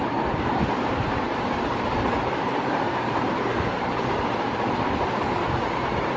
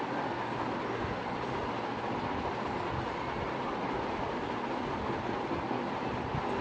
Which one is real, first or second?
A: second